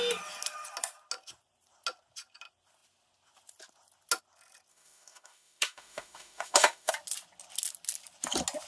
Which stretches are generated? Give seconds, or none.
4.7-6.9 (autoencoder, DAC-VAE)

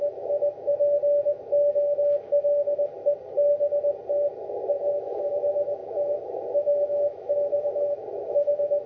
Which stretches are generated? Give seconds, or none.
0.0-0.7 (autoencoder, DAC-VAE); 1.3-2.9; 4.4-8.9